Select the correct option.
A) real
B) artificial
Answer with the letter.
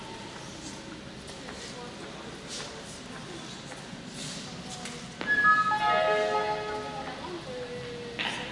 A